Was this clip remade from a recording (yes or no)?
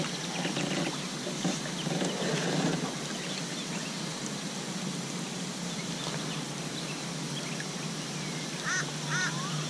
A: no